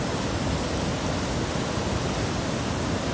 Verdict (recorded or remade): recorded